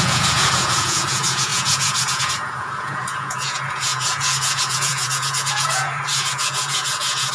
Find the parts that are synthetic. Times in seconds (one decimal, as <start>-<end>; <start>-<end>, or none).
0.0-7.3